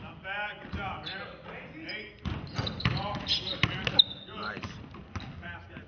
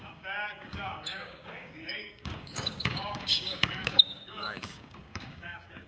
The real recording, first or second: first